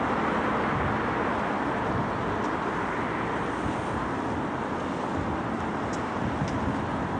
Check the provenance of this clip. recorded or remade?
recorded